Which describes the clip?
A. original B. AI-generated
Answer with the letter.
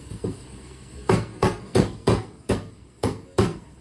B